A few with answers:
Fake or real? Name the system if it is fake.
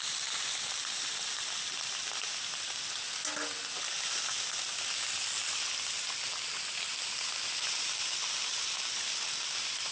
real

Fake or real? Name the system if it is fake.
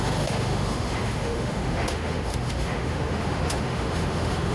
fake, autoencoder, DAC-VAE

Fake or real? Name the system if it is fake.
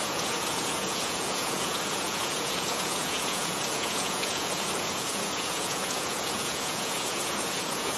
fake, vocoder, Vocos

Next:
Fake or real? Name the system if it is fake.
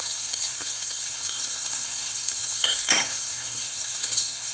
fake, codec, SNAC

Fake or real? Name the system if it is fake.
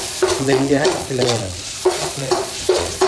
fake, vocoder, Vocos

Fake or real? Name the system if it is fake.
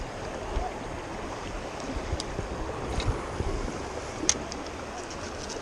real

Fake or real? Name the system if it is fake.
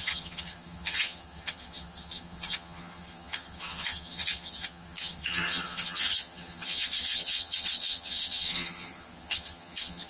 fake, vocoder, HiFi-GAN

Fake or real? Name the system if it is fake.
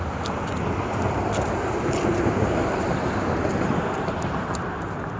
fake, vocoder, BigVGAN v2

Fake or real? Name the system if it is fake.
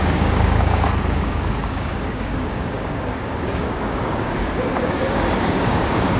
fake, codec, DAC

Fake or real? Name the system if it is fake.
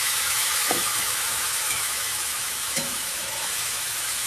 fake, autoencoder, DAC-VAE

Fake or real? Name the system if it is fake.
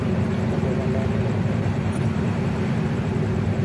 fake, vocoder, BigVGAN v2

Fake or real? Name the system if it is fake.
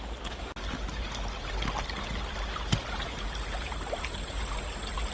real